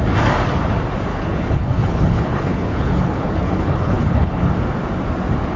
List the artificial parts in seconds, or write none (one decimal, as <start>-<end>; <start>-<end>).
1.1-4.5